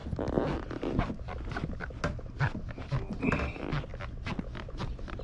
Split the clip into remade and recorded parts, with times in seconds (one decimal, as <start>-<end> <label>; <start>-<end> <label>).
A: 0.0-5.2 recorded